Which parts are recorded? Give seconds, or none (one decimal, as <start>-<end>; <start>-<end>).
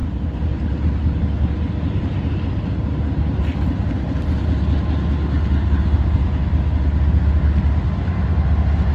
0.0-8.9